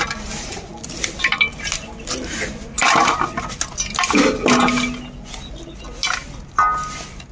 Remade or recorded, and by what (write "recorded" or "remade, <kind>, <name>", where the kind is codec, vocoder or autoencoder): recorded